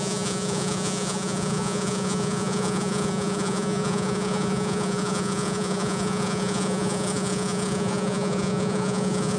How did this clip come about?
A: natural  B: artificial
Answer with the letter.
B